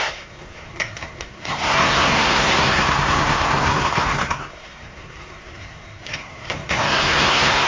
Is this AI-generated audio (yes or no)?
yes